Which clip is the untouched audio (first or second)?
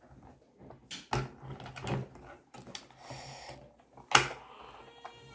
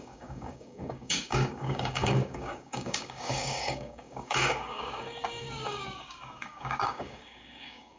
first